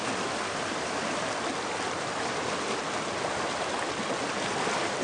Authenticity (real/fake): real